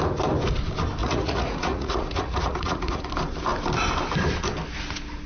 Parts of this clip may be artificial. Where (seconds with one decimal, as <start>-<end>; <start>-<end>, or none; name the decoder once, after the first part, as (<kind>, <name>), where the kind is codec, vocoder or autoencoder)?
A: 1.0-3.1 (vocoder, Vocos)